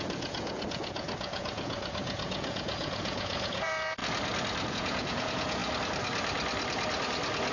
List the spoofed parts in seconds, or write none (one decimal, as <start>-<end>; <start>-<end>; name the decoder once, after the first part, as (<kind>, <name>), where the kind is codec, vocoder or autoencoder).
0.0-4.0 (vocoder, Vocos); 4.7-5.6